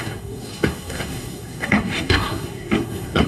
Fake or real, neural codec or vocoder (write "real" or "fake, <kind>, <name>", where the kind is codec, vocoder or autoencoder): fake, codec, SNAC